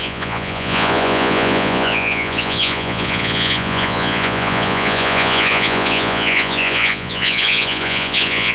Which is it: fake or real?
fake